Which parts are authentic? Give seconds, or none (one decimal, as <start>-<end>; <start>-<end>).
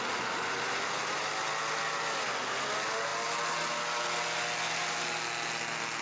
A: 0.0-6.0